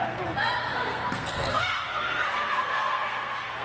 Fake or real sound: fake